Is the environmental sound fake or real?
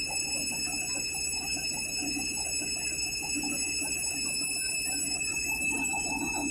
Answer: real